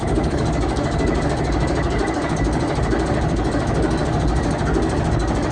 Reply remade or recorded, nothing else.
remade